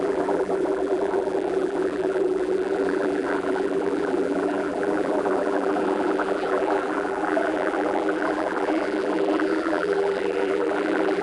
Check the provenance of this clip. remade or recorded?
remade